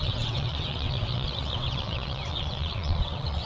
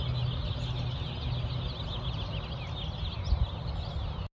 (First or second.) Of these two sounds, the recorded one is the second